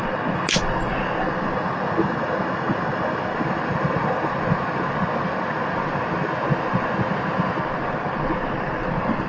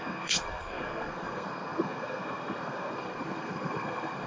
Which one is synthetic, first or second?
second